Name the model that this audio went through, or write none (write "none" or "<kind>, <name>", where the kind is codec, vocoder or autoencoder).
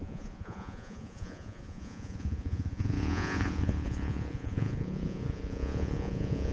vocoder, Vocos